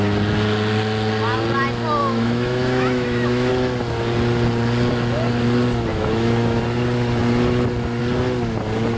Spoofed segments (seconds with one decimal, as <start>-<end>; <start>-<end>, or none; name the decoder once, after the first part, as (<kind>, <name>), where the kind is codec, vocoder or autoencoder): 2.0-3.5 (autoencoder, DAC-VAE); 5.9-6.6